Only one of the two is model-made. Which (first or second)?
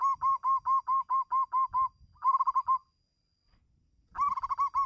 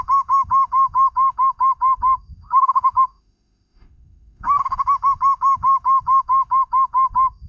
second